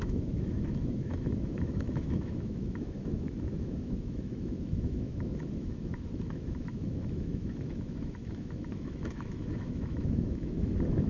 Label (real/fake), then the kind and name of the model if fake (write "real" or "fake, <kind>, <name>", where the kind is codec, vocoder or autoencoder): fake, autoencoder, DAC-VAE